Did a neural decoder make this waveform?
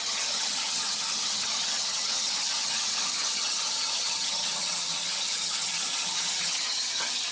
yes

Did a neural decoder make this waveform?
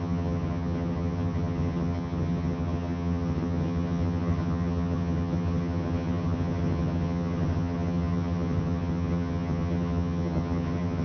yes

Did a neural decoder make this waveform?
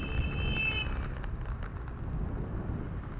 no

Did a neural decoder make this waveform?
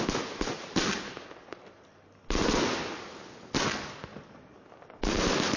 no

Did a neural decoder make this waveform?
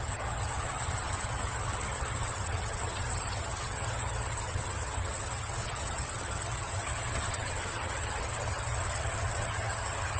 yes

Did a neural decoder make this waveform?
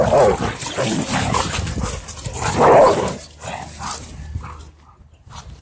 no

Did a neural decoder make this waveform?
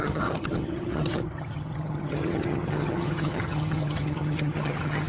yes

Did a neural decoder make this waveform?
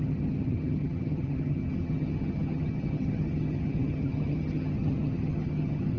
yes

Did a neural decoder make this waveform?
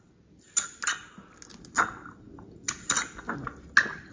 no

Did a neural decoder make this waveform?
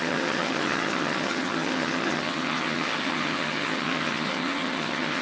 yes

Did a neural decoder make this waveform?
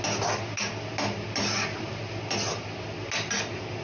no